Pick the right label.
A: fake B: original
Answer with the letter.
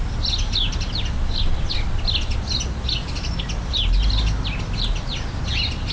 B